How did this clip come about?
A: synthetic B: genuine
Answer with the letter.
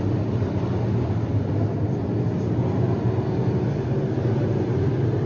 B